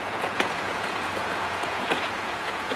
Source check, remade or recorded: remade